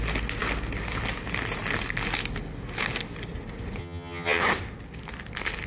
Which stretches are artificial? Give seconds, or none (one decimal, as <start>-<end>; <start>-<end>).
3.8-4.4